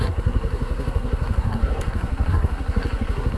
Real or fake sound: fake